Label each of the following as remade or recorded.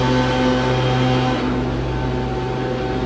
recorded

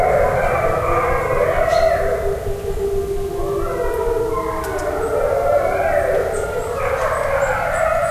recorded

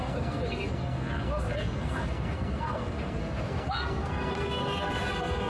remade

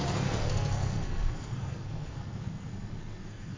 remade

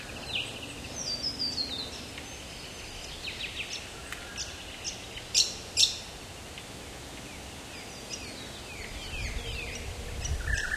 recorded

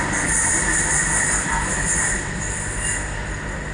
recorded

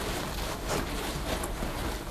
recorded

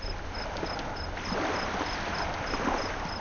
recorded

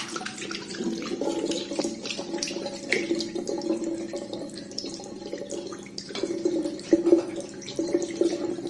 recorded